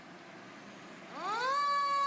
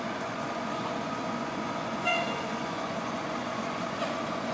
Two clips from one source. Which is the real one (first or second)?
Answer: first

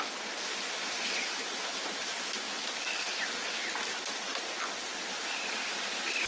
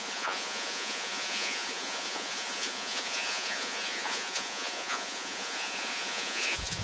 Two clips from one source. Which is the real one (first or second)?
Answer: first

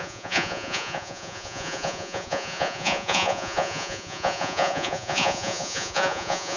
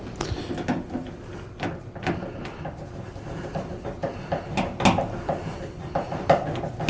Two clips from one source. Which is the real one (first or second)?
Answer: second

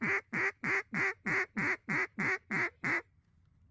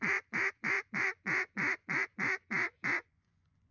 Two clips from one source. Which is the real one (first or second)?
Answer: first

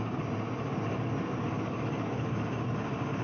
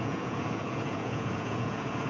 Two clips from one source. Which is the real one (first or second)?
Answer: first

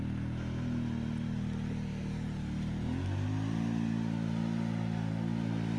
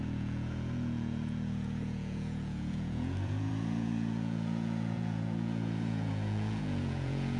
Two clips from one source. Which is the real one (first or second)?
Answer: first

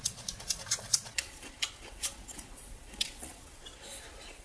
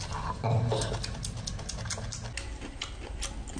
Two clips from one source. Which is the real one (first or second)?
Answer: second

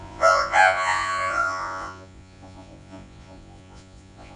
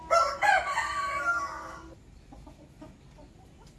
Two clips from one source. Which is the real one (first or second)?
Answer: second